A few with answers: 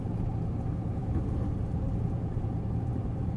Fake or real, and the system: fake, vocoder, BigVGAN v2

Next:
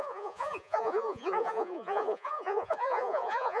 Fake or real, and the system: fake, vocoder, Vocos